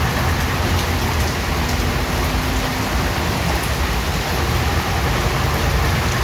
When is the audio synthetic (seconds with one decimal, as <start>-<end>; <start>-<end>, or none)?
none